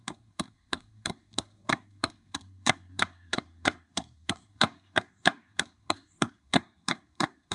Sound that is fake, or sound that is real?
fake